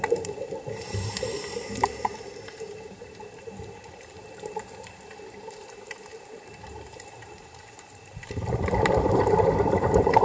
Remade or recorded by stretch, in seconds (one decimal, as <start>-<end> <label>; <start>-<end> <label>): 0.0-10.2 remade